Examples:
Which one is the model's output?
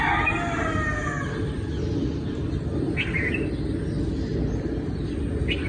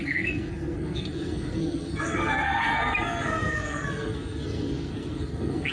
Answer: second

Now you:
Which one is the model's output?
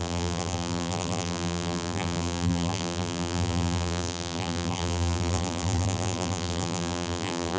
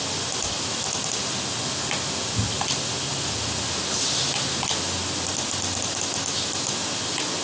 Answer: first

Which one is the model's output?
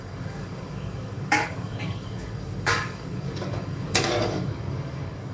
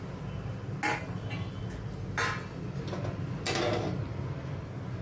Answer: first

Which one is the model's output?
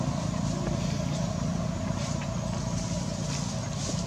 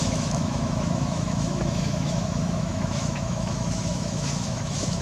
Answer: second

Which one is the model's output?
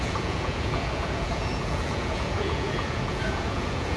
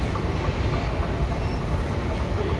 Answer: first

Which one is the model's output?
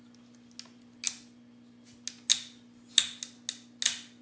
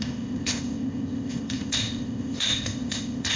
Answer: second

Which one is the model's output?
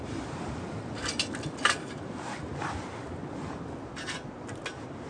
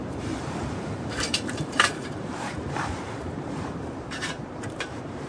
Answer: second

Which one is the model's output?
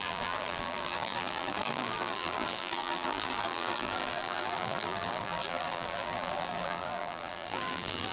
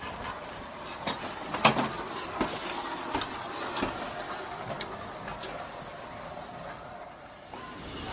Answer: first